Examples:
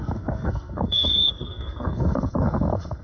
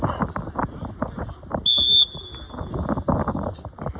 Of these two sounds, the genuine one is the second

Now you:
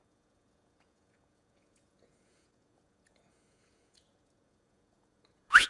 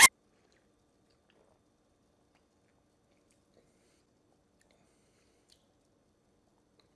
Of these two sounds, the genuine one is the second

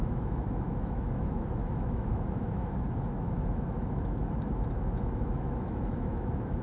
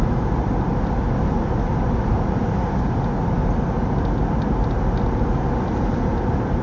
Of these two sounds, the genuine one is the second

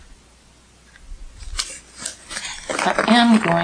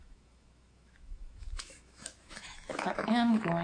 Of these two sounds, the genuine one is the first